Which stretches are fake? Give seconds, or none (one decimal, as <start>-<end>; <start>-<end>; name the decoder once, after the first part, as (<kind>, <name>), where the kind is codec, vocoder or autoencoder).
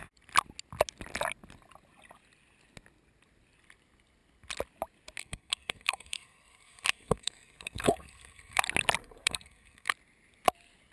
5.2-8.6 (codec, SNAC); 9.0-9.9